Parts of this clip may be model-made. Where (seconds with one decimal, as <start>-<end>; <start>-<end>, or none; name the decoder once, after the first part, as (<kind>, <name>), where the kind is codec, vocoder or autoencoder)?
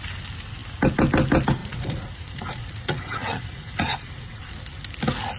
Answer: 1.6-4.5 (vocoder, Vocos)